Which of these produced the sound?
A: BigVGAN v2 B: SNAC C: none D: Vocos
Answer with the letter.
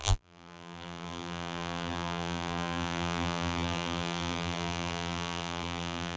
A